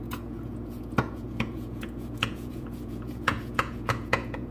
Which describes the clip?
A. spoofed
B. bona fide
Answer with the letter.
A